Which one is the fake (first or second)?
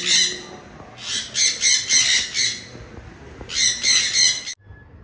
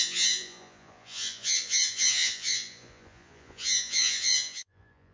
second